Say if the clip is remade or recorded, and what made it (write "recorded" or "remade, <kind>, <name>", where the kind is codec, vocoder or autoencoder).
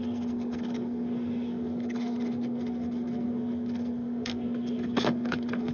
remade, codec, SNAC